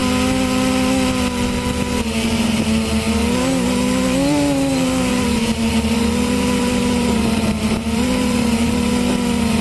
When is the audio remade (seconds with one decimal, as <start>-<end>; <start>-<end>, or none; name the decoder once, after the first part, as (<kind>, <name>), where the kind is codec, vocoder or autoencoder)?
5.1-8.9 (vocoder, BigVGAN v2)